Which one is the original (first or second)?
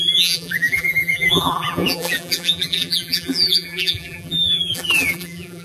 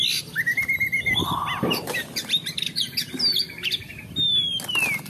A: second